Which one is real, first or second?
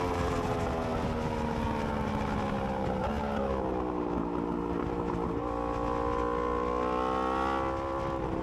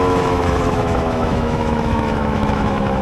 first